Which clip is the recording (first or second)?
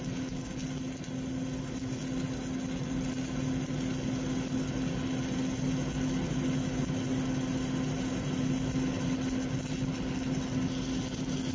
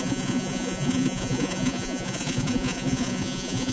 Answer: first